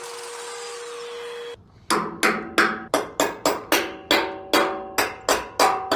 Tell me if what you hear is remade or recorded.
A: recorded